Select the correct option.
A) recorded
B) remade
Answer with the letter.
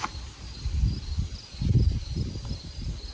A